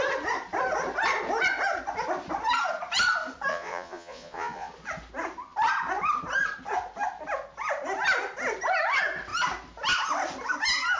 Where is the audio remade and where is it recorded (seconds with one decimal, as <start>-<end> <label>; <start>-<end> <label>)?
0.0-3.5 recorded; 3.5-4.7 remade; 4.7-11.0 recorded